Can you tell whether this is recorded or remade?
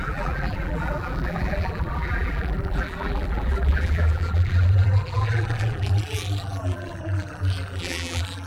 remade